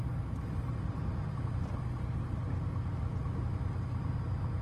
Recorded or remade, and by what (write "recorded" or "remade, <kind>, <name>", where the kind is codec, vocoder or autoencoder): recorded